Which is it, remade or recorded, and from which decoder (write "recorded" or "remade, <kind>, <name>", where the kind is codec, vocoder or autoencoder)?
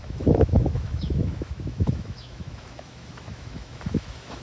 remade, autoencoder, DAC-VAE